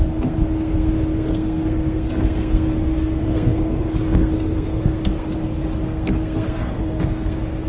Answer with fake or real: fake